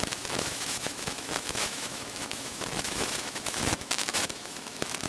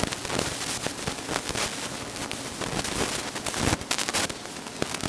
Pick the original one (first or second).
second